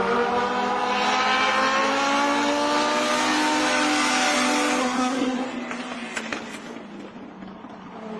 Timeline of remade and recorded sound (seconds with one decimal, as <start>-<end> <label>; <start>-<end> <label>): 0.0-4.8 recorded; 4.8-5.4 remade; 5.4-8.2 recorded